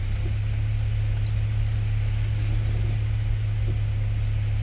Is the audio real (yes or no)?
yes